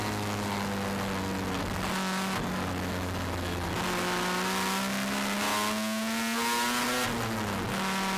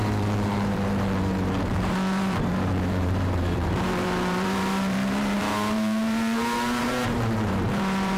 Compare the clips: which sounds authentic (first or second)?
first